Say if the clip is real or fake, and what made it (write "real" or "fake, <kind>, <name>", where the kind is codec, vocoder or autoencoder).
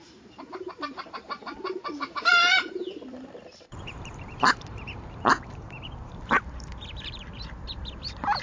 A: fake, vocoder, BigVGAN v2